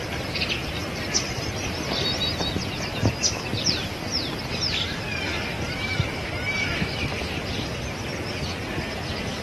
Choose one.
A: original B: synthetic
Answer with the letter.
B